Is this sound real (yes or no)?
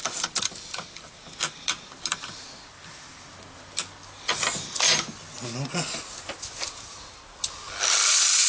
yes